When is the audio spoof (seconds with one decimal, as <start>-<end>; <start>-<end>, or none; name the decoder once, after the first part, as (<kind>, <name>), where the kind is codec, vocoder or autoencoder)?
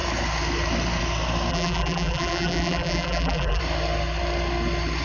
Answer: 1.5-3.6 (vocoder, BigVGAN v2)